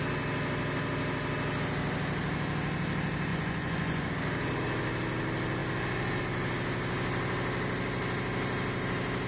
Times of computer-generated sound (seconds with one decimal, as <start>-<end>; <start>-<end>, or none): 3.3-4.1